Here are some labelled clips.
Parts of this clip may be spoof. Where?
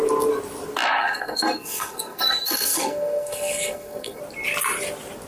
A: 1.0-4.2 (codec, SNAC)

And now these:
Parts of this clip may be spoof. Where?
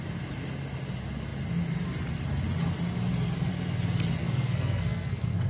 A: 4.2-5.5 (codec, SNAC)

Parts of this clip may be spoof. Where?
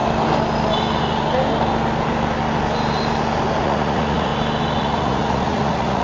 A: 3.6-4.3 (vocoder, Vocos); 4.8-6.0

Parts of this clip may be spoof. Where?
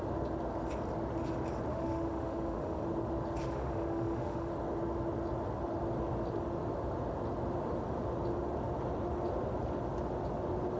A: 1.7-2.8 (autoencoder, DAC-VAE); 3.4-4.5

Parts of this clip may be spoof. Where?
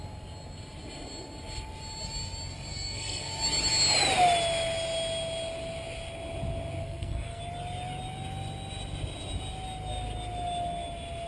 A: 2.7-3.3 (codec, SNAC); 6.8-7.4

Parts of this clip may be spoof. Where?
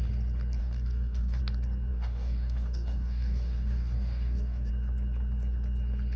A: 0.6-1.4 (codec, DAC); 1.9-4.7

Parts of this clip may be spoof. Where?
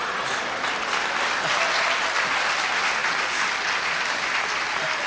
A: none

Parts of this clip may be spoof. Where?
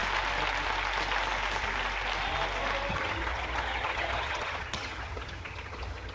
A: 2.9-6.1 (vocoder, HiFi-GAN)